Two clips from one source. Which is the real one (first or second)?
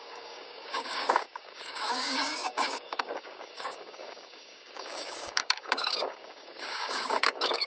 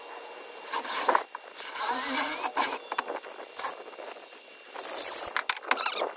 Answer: second